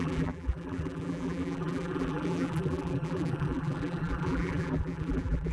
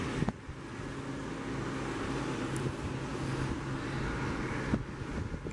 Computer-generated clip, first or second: first